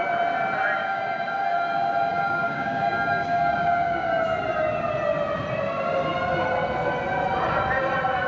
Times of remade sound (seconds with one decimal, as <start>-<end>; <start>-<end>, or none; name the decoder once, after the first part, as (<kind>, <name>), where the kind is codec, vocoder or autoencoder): 0.8-1.3 (codec, DAC); 2.1-4.1